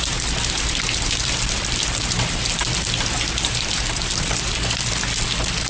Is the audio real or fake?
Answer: real